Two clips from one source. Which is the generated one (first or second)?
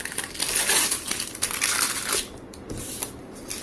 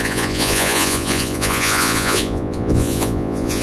second